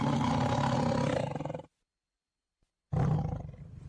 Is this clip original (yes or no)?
yes